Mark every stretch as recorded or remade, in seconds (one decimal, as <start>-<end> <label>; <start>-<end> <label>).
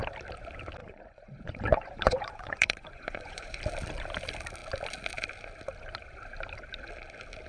0.0-0.8 recorded; 0.8-3.6 remade; 3.6-7.5 recorded